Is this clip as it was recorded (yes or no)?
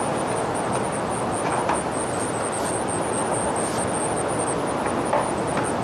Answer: yes